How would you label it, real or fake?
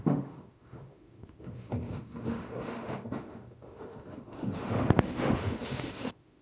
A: fake